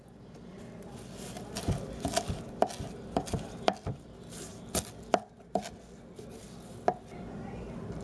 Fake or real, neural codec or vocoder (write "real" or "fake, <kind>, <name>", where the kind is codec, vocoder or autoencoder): real